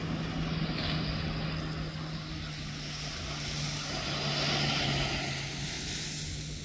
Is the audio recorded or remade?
recorded